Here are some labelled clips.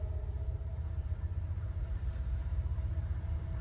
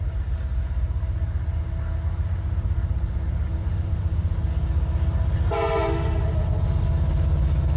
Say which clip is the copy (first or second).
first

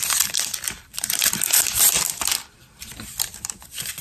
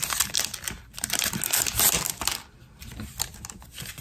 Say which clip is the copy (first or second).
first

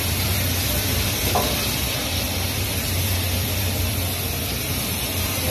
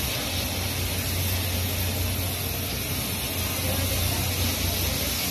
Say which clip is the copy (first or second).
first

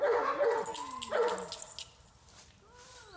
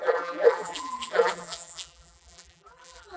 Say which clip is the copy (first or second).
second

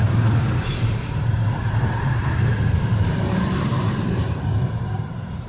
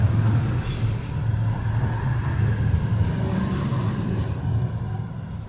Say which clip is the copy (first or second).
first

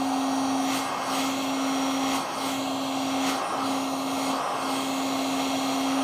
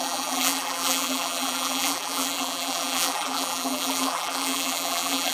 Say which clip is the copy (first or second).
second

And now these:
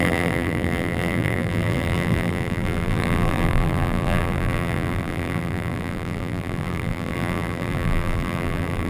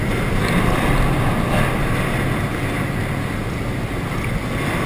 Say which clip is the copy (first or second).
first